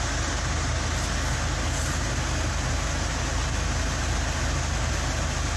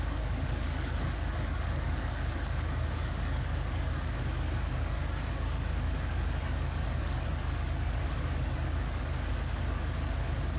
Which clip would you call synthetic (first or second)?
second